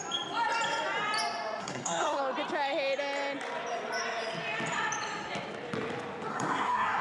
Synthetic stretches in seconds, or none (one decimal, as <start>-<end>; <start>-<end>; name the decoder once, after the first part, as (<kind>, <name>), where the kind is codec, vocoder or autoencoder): 1.6-2.2 (codec, SNAC); 6.3-7.0